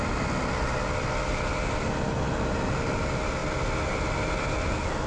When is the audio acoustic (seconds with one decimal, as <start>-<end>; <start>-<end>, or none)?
0.0-5.1